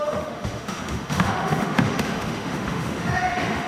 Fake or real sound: fake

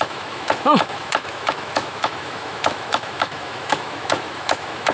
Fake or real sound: fake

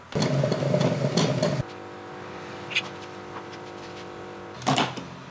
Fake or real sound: real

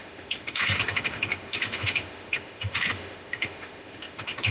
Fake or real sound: fake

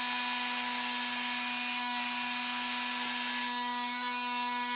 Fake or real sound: real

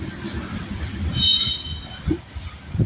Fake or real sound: real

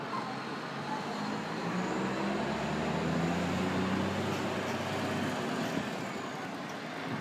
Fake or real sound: real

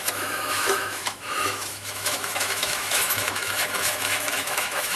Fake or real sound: fake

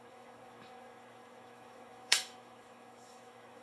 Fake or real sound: fake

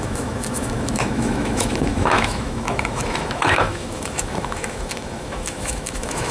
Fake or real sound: fake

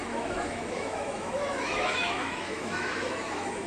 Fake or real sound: fake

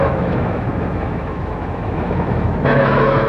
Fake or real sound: fake